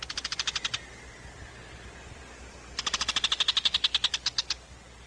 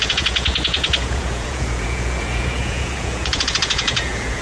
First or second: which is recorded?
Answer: first